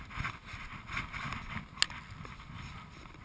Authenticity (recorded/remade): recorded